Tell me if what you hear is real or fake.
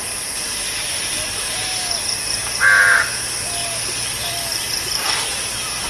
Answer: real